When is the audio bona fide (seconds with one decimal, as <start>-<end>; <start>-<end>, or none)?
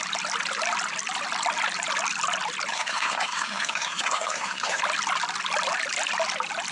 0.0-2.7; 4.8-6.7